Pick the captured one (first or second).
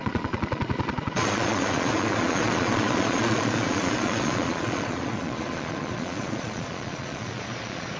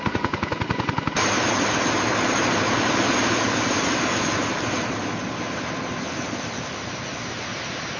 second